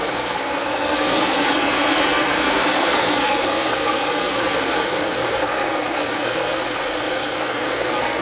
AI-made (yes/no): yes